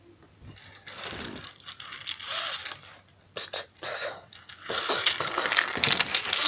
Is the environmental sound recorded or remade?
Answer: recorded